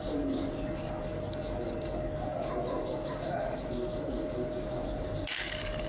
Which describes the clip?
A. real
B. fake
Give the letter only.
B